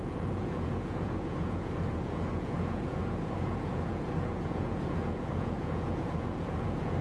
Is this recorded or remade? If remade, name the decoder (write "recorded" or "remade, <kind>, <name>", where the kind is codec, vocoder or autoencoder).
remade, vocoder, Vocos